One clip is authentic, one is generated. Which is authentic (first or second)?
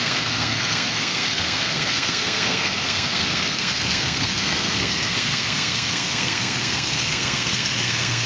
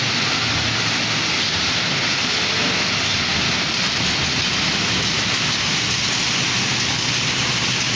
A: second